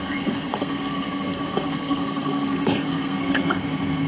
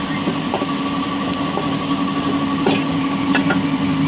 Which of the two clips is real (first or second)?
second